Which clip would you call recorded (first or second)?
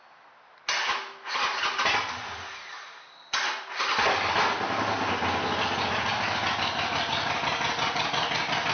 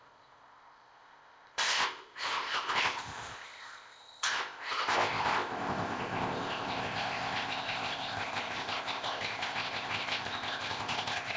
first